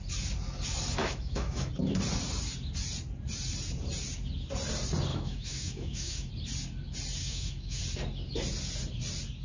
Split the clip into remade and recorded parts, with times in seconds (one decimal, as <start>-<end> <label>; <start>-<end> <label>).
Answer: 0.0-1.0 recorded; 1.0-1.7 remade; 1.7-5.1 recorded; 5.1-6.3 remade; 6.3-7.2 recorded; 7.2-7.8 remade; 7.8-9.4 recorded